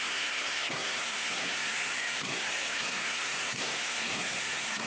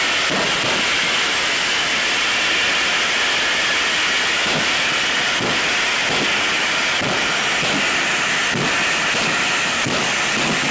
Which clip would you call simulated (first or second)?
first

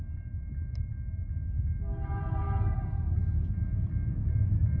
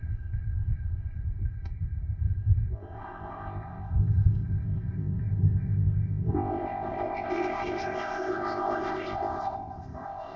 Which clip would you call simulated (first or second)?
second